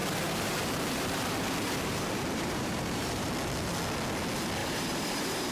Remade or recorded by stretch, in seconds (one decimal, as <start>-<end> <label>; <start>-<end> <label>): 0.0-3.3 remade; 3.3-4.6 recorded; 4.6-5.5 remade